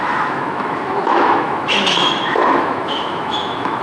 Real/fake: fake